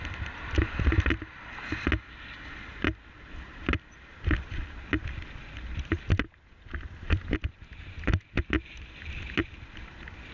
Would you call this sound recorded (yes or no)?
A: yes